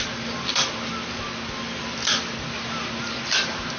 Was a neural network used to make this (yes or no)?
no